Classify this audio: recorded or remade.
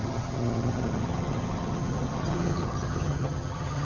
remade